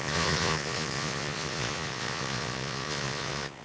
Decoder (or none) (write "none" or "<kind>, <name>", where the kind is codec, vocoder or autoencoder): vocoder, Vocos